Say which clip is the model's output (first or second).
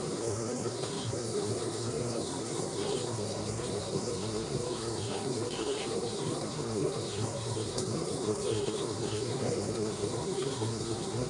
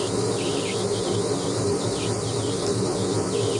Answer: first